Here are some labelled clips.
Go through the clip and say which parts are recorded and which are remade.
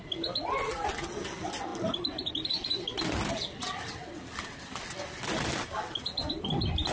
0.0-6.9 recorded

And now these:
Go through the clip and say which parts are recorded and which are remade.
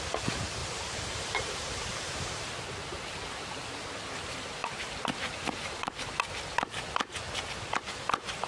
0.0-0.6 recorded; 0.6-2.5 remade; 2.5-4.6 recorded; 4.6-5.9 remade; 5.9-8.5 recorded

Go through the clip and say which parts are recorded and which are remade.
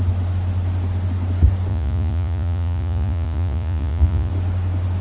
0.0-1.7 recorded; 1.7-4.3 remade; 4.3-5.0 recorded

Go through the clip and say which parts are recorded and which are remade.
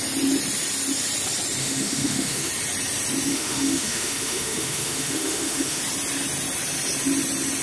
0.0-1.6 recorded; 1.6-2.5 remade; 2.5-3.3 recorded; 3.3-5.8 remade; 5.8-7.6 recorded